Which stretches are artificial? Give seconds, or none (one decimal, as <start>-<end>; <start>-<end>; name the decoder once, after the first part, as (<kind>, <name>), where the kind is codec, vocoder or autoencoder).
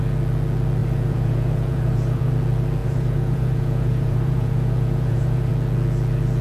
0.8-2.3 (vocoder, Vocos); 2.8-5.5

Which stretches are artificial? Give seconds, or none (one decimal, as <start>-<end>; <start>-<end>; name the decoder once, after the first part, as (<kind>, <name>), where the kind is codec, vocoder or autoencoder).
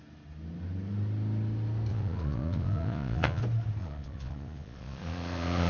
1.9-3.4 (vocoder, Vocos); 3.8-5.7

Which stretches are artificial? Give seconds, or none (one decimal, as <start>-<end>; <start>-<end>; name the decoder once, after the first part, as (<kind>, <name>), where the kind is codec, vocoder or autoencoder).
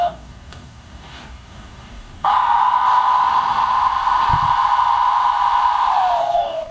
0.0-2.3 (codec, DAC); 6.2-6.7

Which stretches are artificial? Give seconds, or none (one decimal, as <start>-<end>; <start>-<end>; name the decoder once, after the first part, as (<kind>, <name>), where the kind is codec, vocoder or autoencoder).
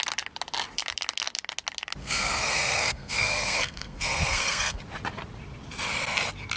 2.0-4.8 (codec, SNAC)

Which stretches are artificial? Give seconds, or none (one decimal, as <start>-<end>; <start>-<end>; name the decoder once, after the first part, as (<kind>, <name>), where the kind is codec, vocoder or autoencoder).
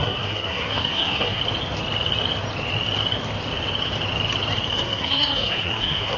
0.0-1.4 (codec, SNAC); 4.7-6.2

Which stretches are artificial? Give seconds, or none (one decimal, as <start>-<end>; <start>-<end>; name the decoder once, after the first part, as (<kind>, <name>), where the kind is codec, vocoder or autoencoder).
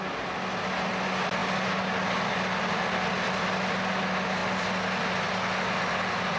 none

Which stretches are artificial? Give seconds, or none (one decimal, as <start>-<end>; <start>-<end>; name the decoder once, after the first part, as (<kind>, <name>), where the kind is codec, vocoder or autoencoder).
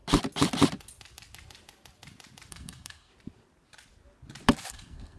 2.5-3.1 (codec, SNAC); 4.7-5.2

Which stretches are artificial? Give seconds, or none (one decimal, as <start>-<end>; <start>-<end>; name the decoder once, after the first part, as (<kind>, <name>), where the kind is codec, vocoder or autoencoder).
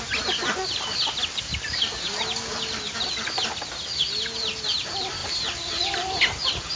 5.2-6.2 (vocoder, BigVGAN v2)